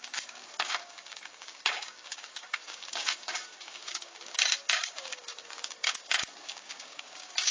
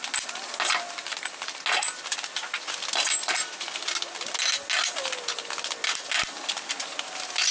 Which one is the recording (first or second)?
second